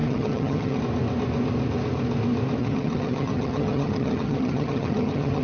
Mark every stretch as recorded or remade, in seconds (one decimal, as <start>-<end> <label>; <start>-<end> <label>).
0.0-0.8 remade; 0.8-2.6 recorded; 2.6-5.4 remade